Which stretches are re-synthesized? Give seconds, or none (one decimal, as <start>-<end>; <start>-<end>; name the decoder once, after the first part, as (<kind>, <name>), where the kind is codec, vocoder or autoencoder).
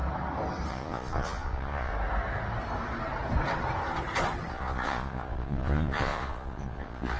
0.7-1.9 (vocoder, Vocos); 4.5-7.2